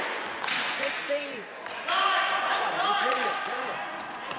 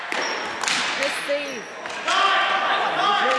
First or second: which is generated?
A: first